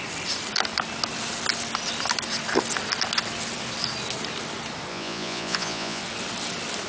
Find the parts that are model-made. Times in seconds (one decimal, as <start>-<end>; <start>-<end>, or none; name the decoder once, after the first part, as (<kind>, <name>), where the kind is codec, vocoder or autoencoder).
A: 4.9-6.0 (vocoder, Vocos)